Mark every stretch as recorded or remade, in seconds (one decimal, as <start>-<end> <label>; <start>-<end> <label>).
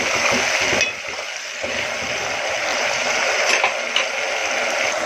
0.0-2.7 recorded; 2.7-3.5 remade; 3.5-5.1 recorded